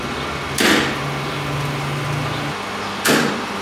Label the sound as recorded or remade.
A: recorded